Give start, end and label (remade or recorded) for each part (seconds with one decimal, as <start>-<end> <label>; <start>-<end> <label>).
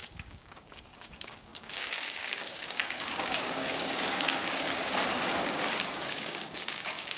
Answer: 0.0-7.2 remade